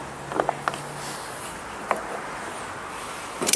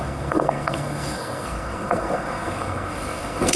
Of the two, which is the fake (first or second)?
second